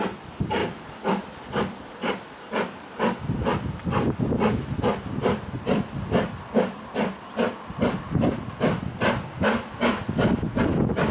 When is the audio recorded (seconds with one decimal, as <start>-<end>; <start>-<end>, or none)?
0.0-11.1